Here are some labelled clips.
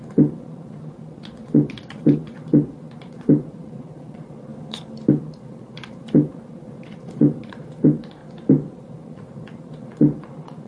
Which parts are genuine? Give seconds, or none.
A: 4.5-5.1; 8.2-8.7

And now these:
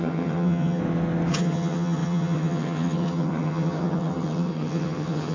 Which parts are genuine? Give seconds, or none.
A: 0.8-1.3

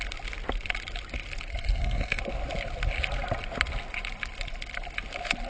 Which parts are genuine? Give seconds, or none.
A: 0.0-1.5; 2.2-5.5

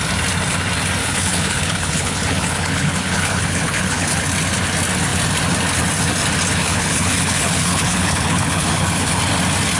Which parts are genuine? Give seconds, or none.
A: 0.0-1.0; 4.2-6.6; 9.2-9.8